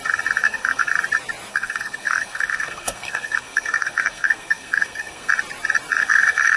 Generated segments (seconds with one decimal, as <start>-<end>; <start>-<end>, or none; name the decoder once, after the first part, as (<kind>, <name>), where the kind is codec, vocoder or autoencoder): 0.4-0.9 (codec, SNAC); 1.5-5.3; 6.0-6.6